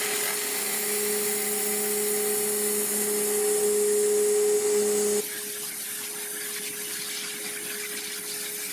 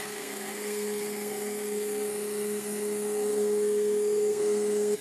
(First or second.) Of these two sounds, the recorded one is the first